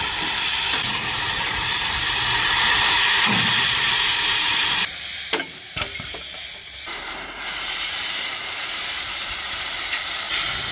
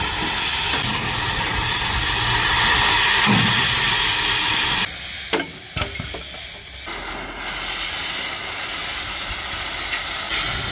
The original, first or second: second